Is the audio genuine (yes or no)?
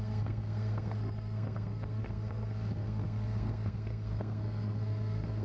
no